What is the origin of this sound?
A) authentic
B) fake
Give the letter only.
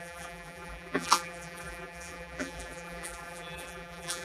B